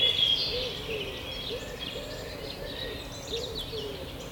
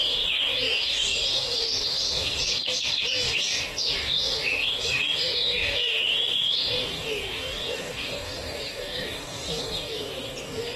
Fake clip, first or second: second